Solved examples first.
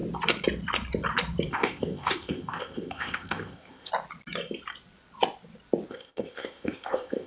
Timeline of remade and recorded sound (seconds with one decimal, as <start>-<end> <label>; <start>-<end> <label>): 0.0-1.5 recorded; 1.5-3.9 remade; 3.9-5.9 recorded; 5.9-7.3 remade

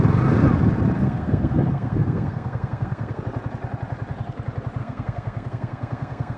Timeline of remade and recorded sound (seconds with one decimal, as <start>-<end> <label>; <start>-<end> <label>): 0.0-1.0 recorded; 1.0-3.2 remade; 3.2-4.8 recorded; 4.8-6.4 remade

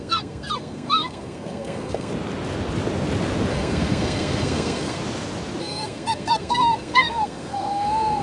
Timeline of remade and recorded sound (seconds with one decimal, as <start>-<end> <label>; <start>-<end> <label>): 0.0-2.1 remade; 2.1-3.5 recorded; 3.5-5.0 remade; 5.0-5.6 recorded; 5.6-8.2 remade

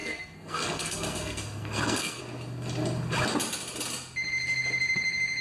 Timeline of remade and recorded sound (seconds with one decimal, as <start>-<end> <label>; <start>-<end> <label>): 0.0-2.2 remade; 2.2-5.4 recorded

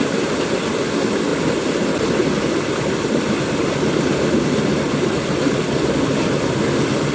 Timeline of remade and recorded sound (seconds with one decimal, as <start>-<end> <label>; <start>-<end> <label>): 0.0-7.1 recorded

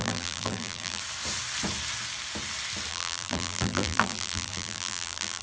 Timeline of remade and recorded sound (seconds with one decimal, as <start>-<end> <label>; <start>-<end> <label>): 0.0-1.0 remade; 1.0-2.9 recorded; 2.9-5.4 remade